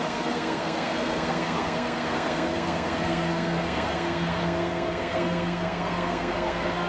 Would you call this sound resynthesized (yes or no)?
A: yes